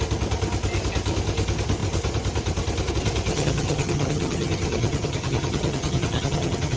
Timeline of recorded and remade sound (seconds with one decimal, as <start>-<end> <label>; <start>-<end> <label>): 0.0-3.3 recorded; 3.3-6.8 remade